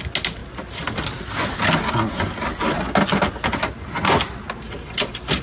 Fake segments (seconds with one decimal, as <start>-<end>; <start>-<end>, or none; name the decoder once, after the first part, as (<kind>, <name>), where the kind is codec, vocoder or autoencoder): none